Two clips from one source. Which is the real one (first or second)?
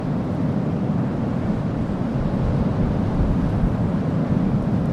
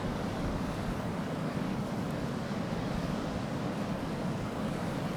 first